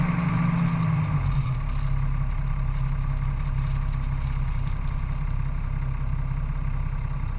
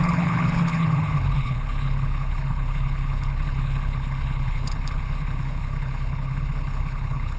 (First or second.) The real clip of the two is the first